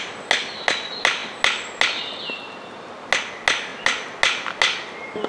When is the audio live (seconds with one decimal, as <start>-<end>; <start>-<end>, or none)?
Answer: 0.0-5.3